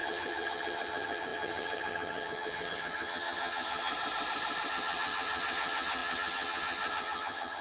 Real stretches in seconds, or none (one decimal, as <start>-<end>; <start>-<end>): 3.9-4.7